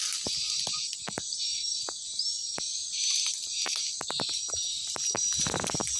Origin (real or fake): real